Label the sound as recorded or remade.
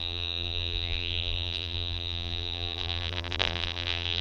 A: remade